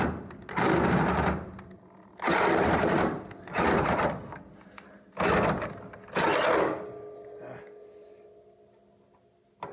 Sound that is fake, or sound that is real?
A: real